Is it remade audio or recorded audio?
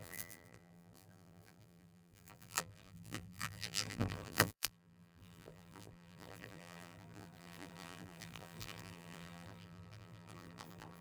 remade